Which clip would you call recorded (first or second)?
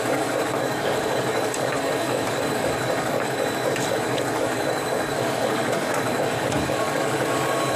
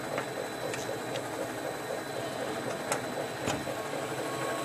second